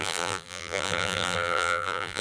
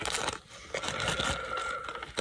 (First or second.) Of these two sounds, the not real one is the first